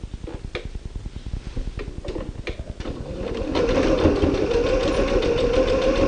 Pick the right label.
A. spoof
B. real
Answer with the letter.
B